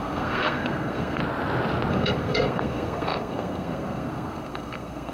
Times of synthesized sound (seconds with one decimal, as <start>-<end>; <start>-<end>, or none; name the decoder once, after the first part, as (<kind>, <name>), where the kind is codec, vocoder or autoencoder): 0.0-1.2 (codec, SNAC); 1.9-5.1